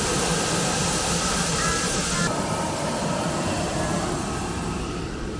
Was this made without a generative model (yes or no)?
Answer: yes